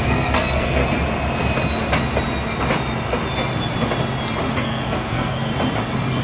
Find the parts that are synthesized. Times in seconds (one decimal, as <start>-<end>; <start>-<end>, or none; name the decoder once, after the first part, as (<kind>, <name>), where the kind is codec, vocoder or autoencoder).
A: 0.0-0.8 (codec, SNAC); 4.5-5.5